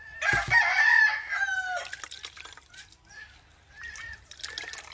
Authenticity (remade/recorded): recorded